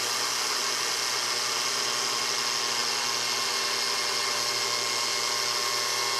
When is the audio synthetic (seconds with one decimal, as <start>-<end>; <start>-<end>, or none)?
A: none